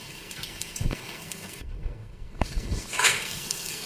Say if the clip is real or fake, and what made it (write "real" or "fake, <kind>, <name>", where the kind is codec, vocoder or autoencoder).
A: fake, codec, SNAC